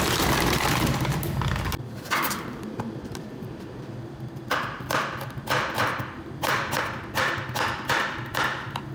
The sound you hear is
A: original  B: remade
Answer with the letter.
B